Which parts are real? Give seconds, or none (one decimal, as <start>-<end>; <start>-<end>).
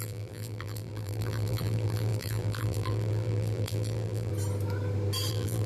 4.3-5.3